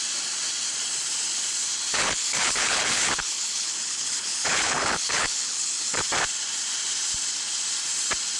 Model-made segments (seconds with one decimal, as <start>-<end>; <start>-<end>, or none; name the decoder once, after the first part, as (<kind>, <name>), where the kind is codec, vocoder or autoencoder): 1.9-6.0 (codec, HILCodec)